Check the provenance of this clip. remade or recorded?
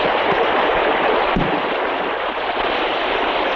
recorded